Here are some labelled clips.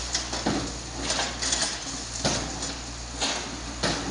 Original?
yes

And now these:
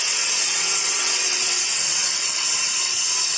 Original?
no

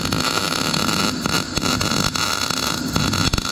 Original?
yes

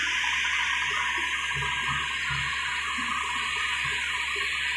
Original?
yes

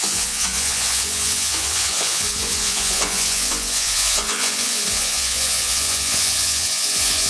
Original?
no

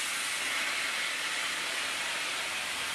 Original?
yes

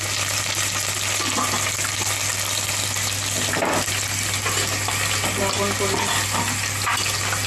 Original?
yes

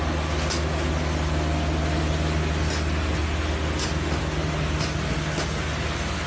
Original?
yes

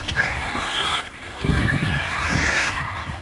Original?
no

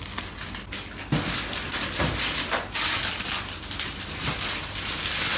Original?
yes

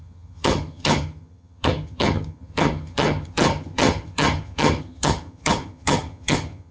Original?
no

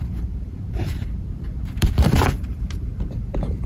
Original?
no